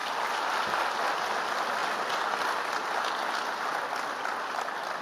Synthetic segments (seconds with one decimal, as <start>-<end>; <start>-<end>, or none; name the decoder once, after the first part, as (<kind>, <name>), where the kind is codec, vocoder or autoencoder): none